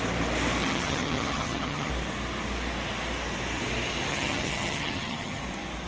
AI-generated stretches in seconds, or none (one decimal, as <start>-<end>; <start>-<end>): 0.6-1.9; 4.1-5.4